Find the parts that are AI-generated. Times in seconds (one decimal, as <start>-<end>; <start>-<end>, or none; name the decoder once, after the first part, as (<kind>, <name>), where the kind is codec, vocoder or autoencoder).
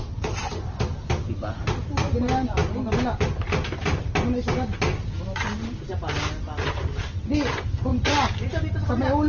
none